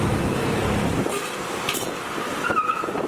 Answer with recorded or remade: recorded